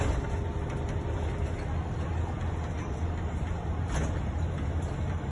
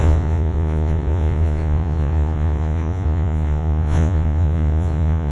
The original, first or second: first